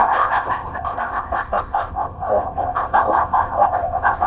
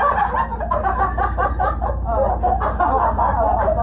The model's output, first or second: first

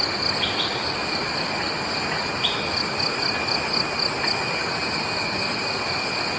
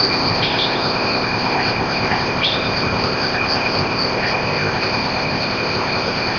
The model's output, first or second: second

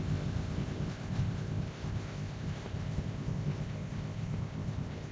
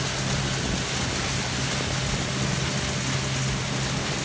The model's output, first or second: first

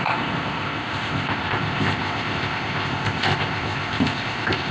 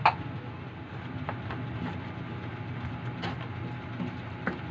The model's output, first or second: first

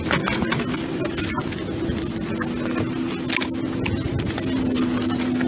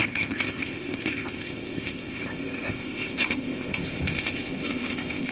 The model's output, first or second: second